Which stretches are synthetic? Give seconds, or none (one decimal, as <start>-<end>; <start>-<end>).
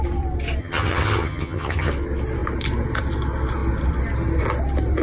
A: 0.6-1.9